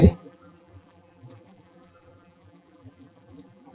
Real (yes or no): no